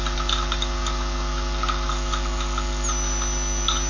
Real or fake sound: real